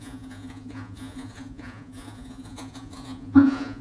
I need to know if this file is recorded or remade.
remade